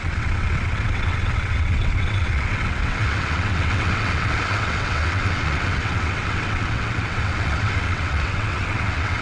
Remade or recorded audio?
remade